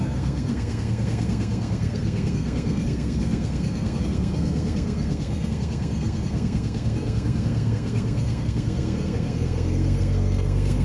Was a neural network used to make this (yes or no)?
yes